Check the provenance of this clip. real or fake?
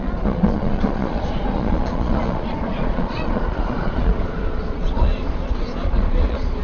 fake